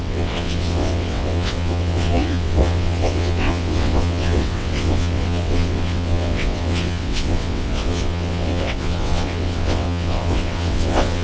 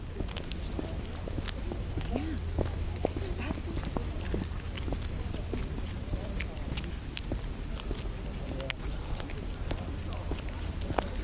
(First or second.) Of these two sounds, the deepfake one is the first